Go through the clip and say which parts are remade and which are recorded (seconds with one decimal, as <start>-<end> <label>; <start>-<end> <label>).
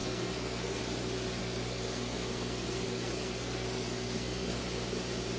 0.0-0.8 remade; 0.8-1.4 recorded; 1.4-4.6 remade; 4.6-5.4 recorded